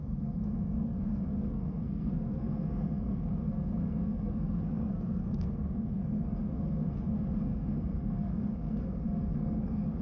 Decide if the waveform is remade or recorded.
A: remade